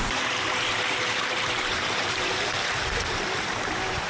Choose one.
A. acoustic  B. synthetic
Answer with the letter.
B